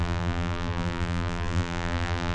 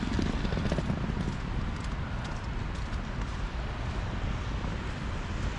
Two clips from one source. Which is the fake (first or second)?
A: first